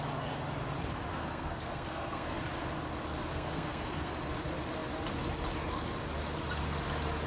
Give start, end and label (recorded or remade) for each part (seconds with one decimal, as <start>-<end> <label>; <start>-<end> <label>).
0.0-1.1 recorded; 1.1-2.4 remade; 2.4-3.3 recorded; 3.3-4.1 remade; 4.1-7.3 recorded